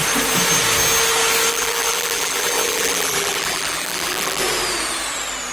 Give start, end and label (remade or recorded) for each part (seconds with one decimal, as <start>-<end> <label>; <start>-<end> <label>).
0.0-1.5 recorded; 1.5-4.4 remade; 4.4-5.5 recorded